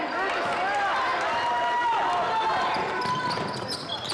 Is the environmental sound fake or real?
real